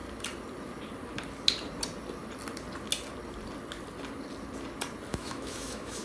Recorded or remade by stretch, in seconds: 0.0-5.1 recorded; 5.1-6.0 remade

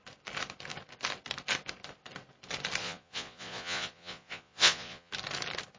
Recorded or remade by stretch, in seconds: 0.0-2.8 recorded; 2.8-5.1 remade; 5.1-5.8 recorded

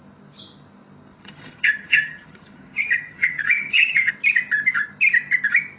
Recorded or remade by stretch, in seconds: 0.0-1.2 recorded; 1.2-4.1 remade; 4.1-5.8 recorded

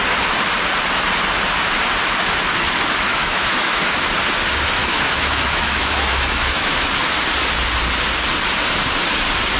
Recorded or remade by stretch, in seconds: 0.0-3.1 recorded; 3.1-3.8 remade; 3.8-4.8 recorded; 4.8-6.9 remade; 6.9-9.6 recorded